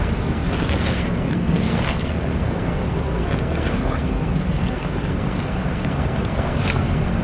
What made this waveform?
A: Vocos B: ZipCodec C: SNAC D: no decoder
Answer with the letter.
C